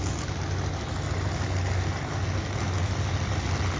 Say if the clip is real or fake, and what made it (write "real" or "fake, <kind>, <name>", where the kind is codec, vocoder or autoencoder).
real